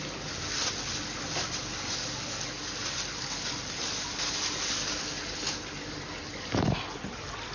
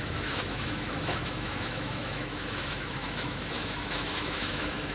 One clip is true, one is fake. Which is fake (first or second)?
second